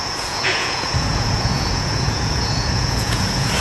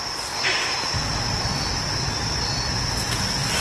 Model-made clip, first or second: first